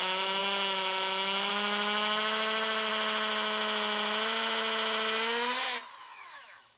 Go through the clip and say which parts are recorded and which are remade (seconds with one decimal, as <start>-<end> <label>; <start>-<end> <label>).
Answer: 0.0-2.9 remade; 2.9-6.0 recorded; 6.0-6.8 remade